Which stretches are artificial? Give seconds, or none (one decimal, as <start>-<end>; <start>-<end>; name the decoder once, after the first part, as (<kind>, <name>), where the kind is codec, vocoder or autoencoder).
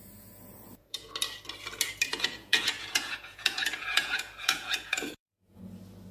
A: 0.0-1.1 (vocoder, Vocos); 2.1-5.6